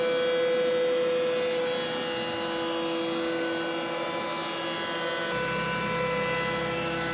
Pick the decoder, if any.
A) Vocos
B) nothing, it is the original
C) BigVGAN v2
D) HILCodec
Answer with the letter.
B